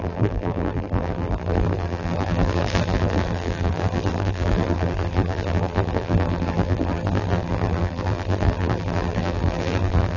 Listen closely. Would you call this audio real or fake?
fake